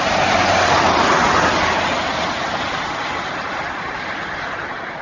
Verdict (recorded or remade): recorded